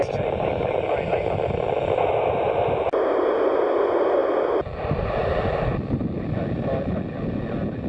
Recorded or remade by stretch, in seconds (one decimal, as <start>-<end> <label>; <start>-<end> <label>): 0.0-7.9 recorded